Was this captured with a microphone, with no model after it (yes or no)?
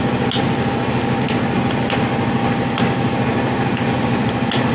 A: yes